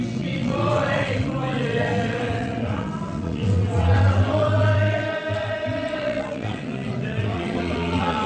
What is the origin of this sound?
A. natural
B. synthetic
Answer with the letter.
B